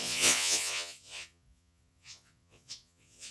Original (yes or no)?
no